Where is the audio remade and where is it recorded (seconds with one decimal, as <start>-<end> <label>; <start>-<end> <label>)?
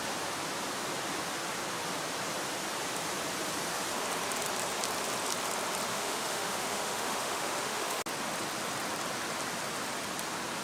0.0-5.9 recorded; 5.9-8.0 remade; 8.0-10.6 recorded